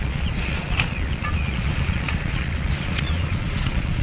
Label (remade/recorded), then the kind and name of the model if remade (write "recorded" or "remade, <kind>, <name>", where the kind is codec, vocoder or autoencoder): remade, vocoder, Vocos